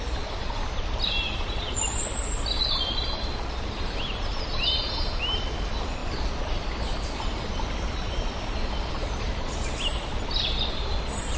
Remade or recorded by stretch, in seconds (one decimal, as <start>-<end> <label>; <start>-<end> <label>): 0.0-11.4 recorded